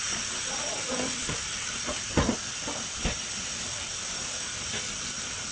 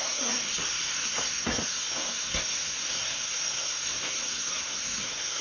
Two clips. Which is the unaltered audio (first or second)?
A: first